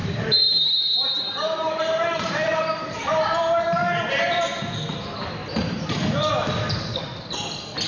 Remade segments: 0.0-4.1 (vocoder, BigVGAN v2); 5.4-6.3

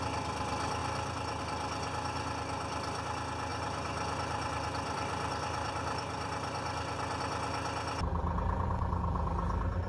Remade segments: 3.5-7.2 (vocoder, BigVGAN v2)

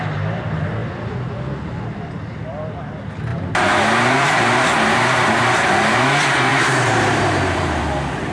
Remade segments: 3.3-3.8 (vocoder, BigVGAN v2); 6.5-7.8

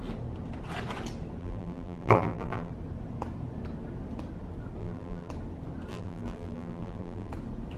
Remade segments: 1.4-2.7 (vocoder, BigVGAN v2); 4.8-5.3; 5.9-7.3

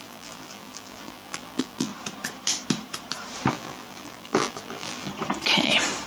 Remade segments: 0.0-1.9 (vocoder, BigVGAN v2); 3.5-5.1